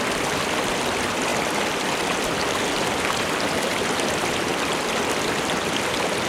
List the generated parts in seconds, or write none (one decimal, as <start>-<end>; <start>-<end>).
0.0-1.3; 1.9-4.5; 5.2-6.3